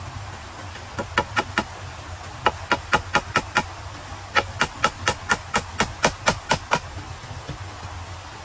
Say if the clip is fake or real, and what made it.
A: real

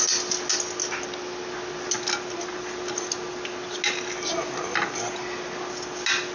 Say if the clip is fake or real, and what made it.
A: real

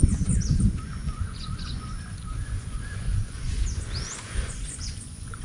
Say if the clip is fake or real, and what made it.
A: fake, vocoder, Vocos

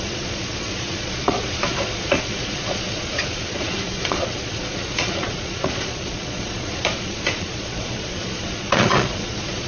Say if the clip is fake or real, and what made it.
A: fake, vocoder, Vocos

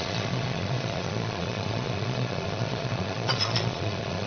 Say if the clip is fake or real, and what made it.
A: fake, vocoder, Vocos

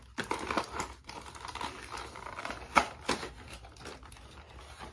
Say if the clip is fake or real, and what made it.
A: real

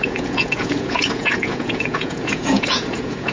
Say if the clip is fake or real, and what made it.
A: fake, vocoder, Vocos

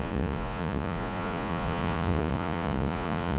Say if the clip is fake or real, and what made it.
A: fake, vocoder, Vocos